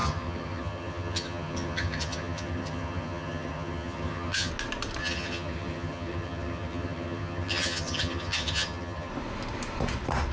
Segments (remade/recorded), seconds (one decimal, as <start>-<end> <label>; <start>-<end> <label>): 0.0-4.5 remade; 4.5-5.0 recorded; 5.0-9.1 remade; 9.1-10.3 recorded